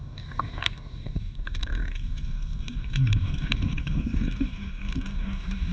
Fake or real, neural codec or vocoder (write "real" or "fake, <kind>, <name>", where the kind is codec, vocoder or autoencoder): fake, codec, DAC